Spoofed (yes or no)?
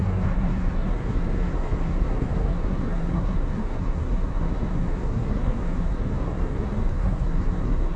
yes